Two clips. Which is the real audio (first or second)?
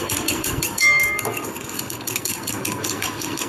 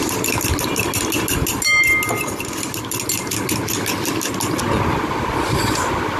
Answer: second